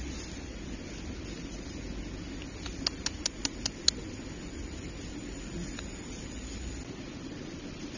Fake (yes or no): no